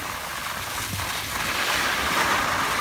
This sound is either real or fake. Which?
real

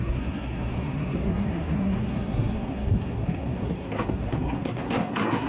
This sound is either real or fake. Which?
fake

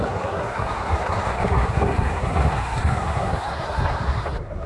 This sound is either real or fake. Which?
fake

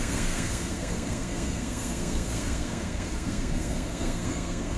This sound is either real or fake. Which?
fake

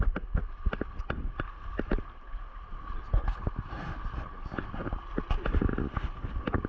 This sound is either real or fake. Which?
real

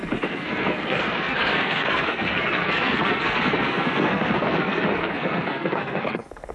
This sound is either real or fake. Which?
fake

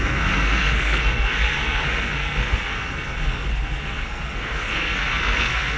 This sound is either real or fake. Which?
fake